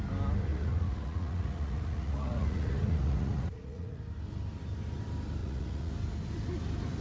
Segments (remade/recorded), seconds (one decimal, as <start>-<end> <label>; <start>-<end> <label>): 0.0-0.5 recorded; 0.5-4.0 remade; 4.0-5.4 recorded; 5.4-5.9 remade; 5.9-7.0 recorded